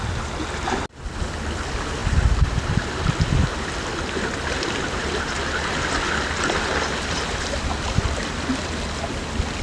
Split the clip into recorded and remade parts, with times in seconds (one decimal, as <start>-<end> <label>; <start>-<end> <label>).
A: 0.0-9.6 recorded